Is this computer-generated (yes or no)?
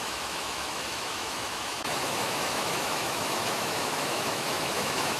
yes